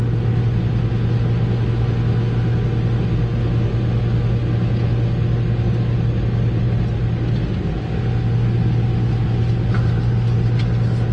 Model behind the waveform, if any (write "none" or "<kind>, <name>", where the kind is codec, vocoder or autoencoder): none